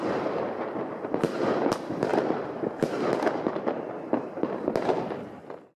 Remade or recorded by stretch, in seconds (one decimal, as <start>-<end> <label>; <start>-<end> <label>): 0.0-5.8 recorded